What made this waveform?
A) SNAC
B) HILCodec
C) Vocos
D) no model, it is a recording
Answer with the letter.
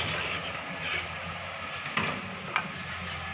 D